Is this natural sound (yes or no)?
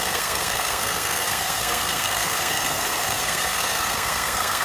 no